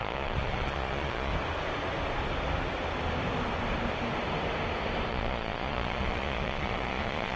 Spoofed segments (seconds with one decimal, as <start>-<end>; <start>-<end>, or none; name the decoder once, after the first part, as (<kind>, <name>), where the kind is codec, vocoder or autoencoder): 0.0-1.3 (vocoder, Vocos); 5.1-7.4